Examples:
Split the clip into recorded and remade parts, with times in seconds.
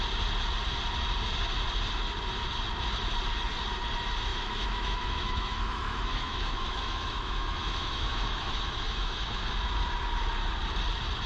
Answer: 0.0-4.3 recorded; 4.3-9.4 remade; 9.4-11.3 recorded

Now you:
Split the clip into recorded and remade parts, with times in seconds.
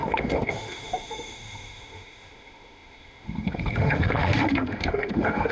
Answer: 0.0-5.5 remade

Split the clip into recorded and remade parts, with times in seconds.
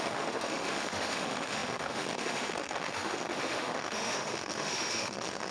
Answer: 0.0-5.5 remade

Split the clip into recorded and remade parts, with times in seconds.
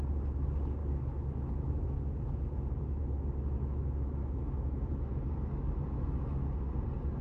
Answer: 0.0-0.8 recorded; 0.8-2.4 remade; 2.4-3.0 recorded; 3.0-6.7 remade; 6.7-7.2 recorded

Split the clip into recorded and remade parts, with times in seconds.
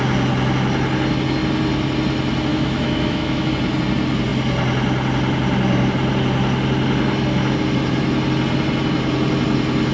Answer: 0.0-2.5 recorded; 2.5-3.5 remade; 3.5-9.9 recorded